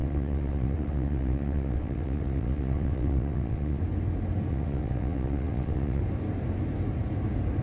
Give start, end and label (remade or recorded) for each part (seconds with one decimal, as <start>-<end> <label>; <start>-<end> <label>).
0.0-3.8 remade; 3.8-4.5 recorded; 4.5-6.0 remade; 6.0-7.6 recorded